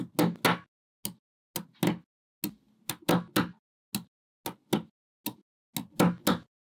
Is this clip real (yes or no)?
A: yes